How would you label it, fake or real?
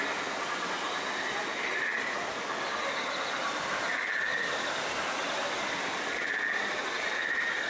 real